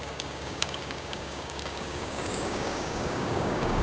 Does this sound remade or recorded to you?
remade